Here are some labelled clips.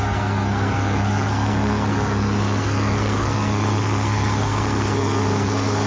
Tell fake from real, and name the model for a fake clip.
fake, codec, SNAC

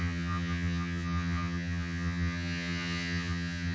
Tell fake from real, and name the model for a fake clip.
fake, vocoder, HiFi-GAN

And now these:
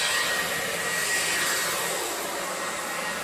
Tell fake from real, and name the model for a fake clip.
real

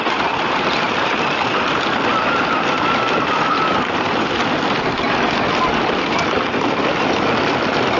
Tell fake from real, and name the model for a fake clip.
real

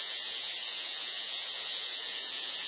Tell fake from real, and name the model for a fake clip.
fake, vocoder, Vocos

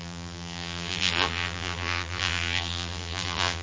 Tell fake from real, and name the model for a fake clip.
fake, vocoder, BigVGAN v2